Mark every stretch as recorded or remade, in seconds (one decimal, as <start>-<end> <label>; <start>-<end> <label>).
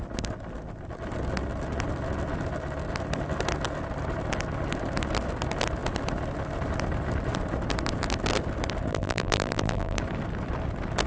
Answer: 0.0-8.9 recorded; 8.9-10.0 remade; 10.0-11.1 recorded